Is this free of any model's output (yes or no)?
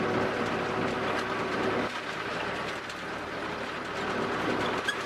yes